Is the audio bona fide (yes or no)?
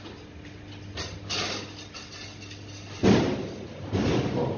yes